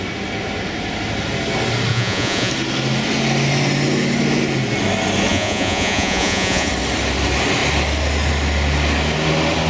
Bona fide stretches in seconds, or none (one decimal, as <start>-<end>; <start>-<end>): 0.0-1.9; 2.5-5.3; 6.7-9.7